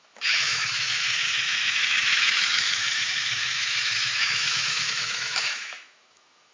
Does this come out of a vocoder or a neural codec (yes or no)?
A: yes